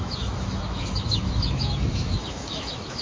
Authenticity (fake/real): fake